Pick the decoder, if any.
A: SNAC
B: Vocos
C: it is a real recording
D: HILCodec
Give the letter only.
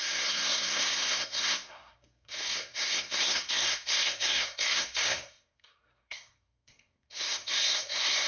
A